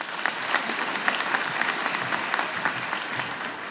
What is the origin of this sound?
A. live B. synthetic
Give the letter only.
A